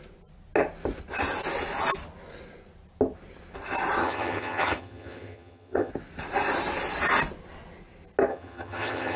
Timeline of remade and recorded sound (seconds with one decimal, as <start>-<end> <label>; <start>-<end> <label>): 0.0-4.0 recorded; 4.0-5.9 remade; 5.9-8.3 recorded; 8.3-9.2 remade